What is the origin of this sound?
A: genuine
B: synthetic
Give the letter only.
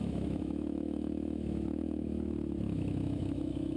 B